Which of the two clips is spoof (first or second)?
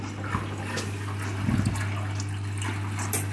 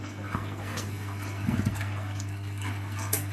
second